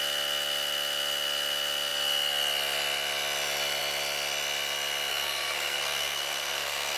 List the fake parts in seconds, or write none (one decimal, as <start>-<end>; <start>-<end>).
5.1-7.0